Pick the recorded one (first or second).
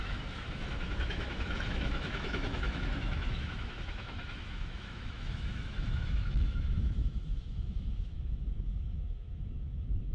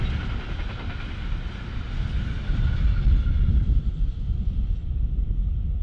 second